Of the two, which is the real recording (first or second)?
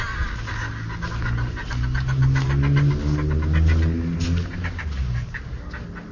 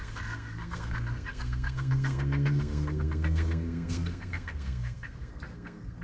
first